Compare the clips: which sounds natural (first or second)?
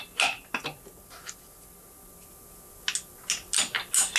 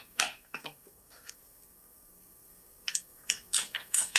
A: first